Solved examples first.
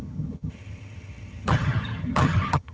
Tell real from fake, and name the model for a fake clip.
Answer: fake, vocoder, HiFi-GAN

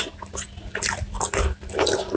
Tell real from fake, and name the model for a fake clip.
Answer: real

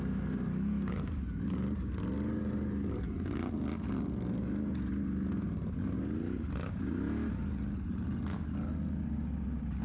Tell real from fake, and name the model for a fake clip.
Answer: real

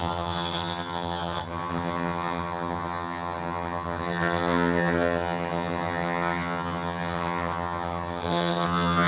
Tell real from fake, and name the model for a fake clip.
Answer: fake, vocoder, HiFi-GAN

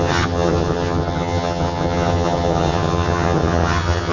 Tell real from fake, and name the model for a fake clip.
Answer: fake, vocoder, HiFi-GAN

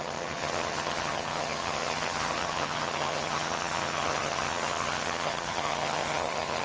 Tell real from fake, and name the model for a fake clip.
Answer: fake, vocoder, HiFi-GAN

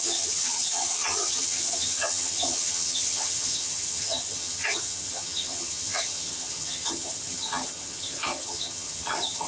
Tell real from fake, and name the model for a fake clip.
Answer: fake, vocoder, HiFi-GAN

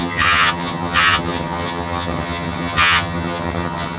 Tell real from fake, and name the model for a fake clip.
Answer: fake, vocoder, HiFi-GAN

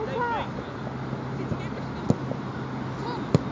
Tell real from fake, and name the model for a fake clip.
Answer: real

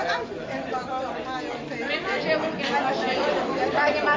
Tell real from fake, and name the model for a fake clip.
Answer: real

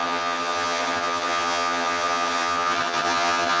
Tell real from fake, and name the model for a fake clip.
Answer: fake, vocoder, HiFi-GAN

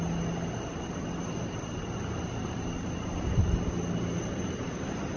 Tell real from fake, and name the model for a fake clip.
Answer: real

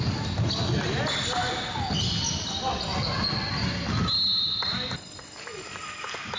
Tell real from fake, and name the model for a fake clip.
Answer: real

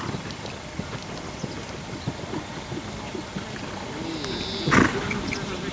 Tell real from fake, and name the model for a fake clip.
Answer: real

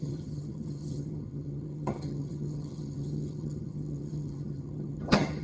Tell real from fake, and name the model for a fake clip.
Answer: fake, vocoder, HiFi-GAN